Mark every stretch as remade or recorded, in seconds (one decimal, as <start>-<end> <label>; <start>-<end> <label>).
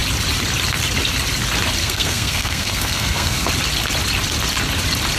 0.0-1.8 recorded; 1.8-3.5 remade; 3.5-5.2 recorded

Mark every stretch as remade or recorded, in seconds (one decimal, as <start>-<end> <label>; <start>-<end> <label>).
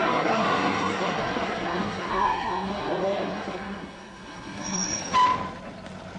0.0-5.0 remade; 5.0-6.2 recorded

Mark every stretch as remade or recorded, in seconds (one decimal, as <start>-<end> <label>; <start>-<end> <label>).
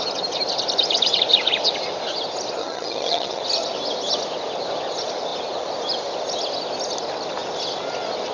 0.0-2.6 recorded; 2.6-3.4 remade; 3.4-8.3 recorded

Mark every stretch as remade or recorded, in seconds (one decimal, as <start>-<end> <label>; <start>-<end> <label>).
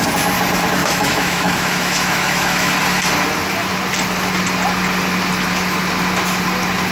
0.0-0.8 recorded; 0.8-2.7 remade; 2.7-6.9 recorded